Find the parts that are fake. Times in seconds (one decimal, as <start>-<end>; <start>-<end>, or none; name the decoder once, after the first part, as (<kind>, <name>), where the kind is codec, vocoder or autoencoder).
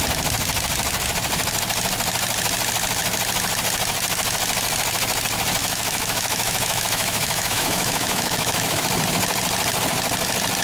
5.6-8.8 (autoencoder, DAC-VAE)